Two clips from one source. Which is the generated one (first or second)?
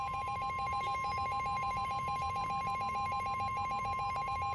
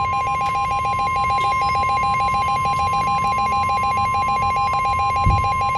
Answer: first